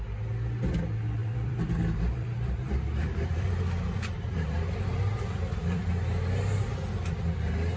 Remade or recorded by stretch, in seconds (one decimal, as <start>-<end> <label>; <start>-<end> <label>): 0.0-1.2 recorded; 1.2-5.9 remade; 5.9-7.8 recorded